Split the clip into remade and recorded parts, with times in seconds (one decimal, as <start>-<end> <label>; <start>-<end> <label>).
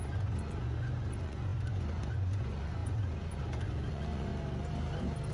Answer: 0.0-4.3 remade; 4.3-5.3 recorded